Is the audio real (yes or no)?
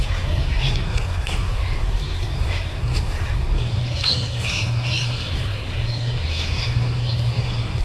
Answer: no